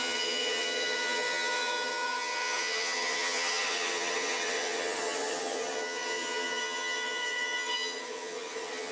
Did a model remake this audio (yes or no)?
yes